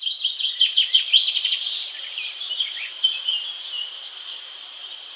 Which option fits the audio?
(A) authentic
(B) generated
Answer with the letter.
B